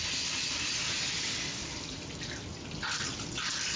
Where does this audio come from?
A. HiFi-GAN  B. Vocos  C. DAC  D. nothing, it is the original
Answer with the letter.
D